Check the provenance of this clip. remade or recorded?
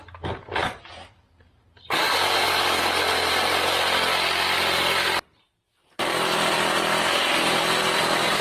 recorded